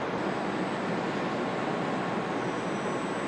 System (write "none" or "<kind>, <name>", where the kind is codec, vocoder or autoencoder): none